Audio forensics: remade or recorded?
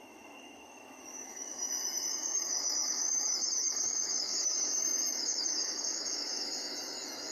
remade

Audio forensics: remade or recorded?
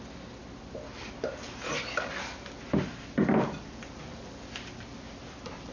recorded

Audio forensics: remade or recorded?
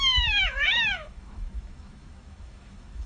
remade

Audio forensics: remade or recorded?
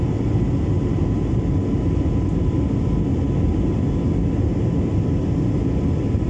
recorded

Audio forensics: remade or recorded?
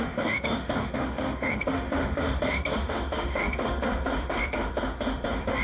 remade